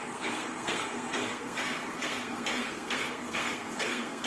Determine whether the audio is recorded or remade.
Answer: remade